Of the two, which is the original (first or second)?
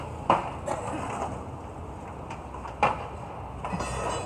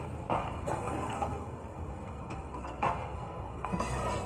first